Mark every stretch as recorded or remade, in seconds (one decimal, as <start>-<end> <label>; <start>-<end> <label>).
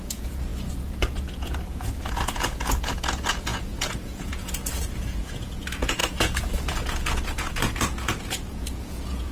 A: 0.0-9.3 remade